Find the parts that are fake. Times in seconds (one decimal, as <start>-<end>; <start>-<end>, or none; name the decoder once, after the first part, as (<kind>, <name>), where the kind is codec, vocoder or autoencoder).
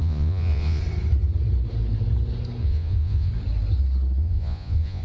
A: 0.0-0.8 (vocoder, Vocos); 2.6-3.3; 4.2-5.0